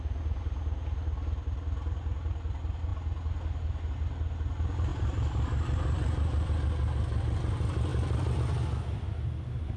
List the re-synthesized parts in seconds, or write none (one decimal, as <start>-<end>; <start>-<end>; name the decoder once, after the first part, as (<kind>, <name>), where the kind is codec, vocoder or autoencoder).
4.9-6.5 (vocoder, BigVGAN v2); 7.9-8.4